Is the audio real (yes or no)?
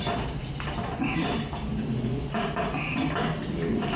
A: yes